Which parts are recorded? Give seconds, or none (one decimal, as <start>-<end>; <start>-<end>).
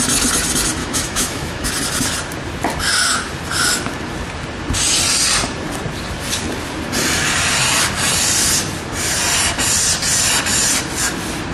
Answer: 0.0-0.8; 1.7-11.5